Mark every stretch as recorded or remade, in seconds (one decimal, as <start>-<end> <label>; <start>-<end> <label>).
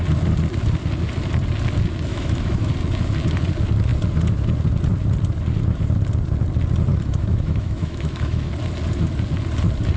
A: 0.0-2.1 recorded; 2.1-2.7 remade; 2.7-6.9 recorded; 6.9-8.5 remade; 8.5-10.0 recorded